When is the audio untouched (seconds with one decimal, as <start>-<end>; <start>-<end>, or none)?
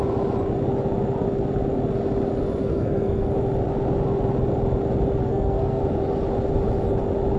0.0-2.6; 3.3-5.2; 5.8-7.4